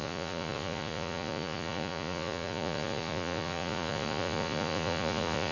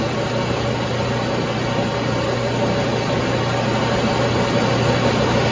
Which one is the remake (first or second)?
first